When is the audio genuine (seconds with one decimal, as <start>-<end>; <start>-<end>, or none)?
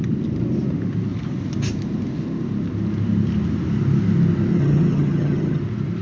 0.0-4.5; 5.6-6.0